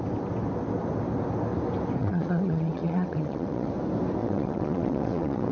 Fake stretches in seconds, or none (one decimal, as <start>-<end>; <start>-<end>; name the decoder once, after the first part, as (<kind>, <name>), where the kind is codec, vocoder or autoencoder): 2.0-3.7 (vocoder, WaveNeXt); 4.2-5.5